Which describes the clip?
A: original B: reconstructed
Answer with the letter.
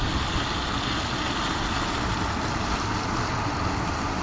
A